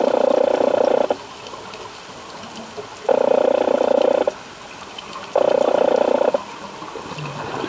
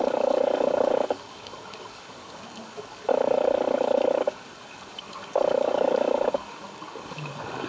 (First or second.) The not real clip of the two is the second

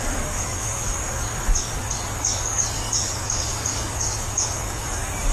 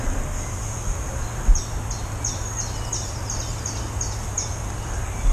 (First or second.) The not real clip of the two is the first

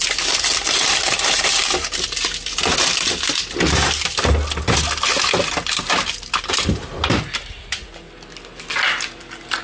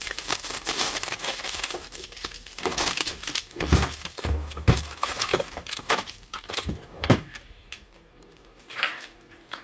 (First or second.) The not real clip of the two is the second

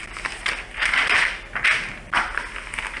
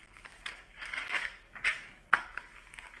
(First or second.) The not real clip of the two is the second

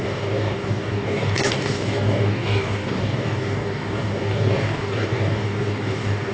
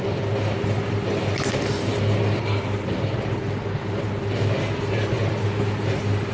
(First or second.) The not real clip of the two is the first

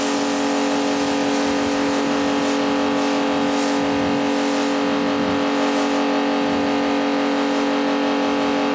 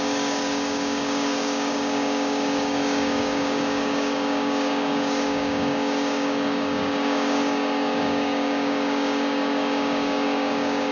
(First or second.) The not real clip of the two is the second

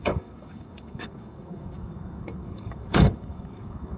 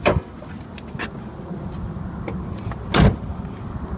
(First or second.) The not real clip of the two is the first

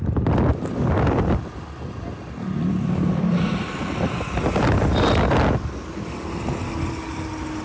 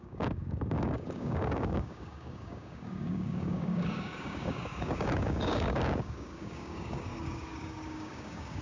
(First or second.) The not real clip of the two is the second